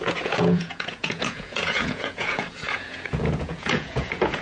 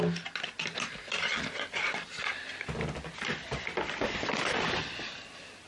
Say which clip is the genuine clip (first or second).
second